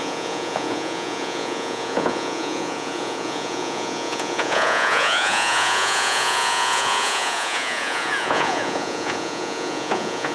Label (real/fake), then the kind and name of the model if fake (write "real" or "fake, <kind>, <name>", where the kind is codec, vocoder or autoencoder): fake, vocoder, Vocos